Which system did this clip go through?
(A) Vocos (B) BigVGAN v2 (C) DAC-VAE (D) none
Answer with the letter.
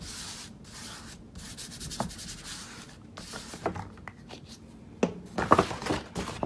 D